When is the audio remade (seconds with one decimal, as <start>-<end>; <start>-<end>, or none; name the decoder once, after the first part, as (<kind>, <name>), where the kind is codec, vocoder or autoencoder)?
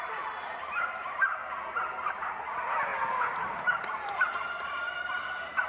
0.0-1.4 (vocoder, BigVGAN v2); 2.3-2.9; 3.4-4.3